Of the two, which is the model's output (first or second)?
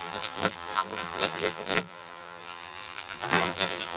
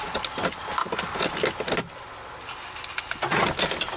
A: first